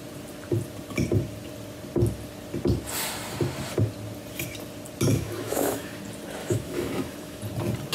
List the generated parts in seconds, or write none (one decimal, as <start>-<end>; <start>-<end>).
5.1-6.0; 6.4-7.4